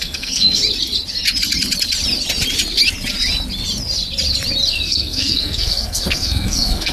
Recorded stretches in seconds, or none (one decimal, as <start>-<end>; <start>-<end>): 0.6-4.7